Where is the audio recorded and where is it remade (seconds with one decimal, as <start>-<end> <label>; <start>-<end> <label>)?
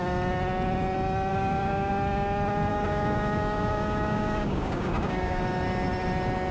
0.0-1.3 recorded; 1.3-1.9 remade; 1.9-2.7 recorded; 2.7-5.4 remade; 5.4-6.5 recorded